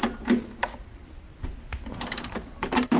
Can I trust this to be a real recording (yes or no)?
yes